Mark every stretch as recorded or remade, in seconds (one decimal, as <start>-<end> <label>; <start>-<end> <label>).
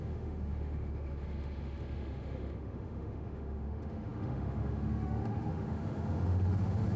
0.0-7.0 remade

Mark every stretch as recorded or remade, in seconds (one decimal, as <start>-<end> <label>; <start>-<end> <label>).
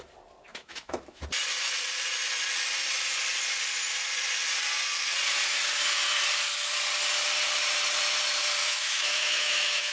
0.0-0.5 recorded; 0.5-1.2 remade; 1.2-8.6 recorded; 8.6-9.9 remade